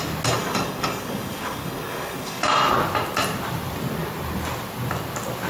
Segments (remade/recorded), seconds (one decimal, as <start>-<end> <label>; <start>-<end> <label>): 0.0-0.4 recorded; 0.4-2.4 remade; 2.4-5.5 recorded